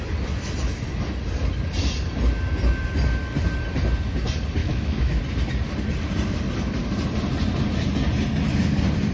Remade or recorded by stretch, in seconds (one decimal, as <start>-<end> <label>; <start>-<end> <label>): 0.0-4.6 recorded; 4.6-5.2 remade; 5.2-9.1 recorded